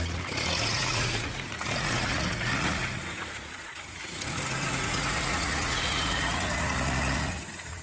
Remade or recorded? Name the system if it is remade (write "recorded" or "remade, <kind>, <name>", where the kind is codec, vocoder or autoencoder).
remade, vocoder, Vocos